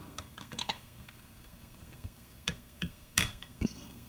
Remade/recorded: remade